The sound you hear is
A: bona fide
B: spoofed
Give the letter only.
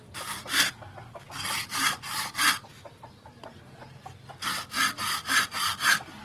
A